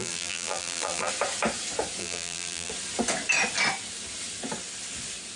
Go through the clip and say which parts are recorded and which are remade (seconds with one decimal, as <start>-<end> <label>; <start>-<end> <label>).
0.0-1.1 remade; 1.1-2.0 recorded; 2.0-2.7 remade; 2.7-5.4 recorded